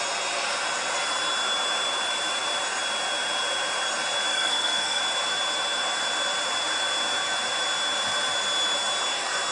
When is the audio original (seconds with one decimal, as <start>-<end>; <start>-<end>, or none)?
0.0-4.3; 5.0-9.5